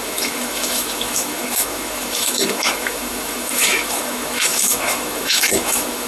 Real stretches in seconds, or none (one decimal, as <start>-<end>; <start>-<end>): none